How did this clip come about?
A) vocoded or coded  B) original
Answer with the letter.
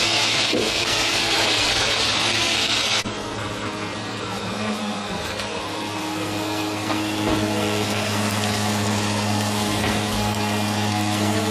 A